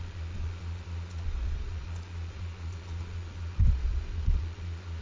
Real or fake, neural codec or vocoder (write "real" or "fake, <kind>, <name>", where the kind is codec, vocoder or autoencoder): fake, vocoder, Vocos